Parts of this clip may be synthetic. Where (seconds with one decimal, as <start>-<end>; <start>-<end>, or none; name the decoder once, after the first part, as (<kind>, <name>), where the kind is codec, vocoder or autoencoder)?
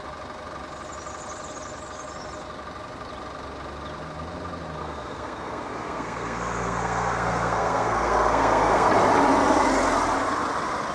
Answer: 4.8-8.9 (codec, SNAC)